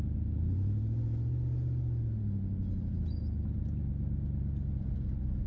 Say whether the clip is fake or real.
real